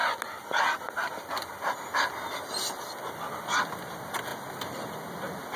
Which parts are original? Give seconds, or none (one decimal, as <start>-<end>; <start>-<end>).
0.0-5.6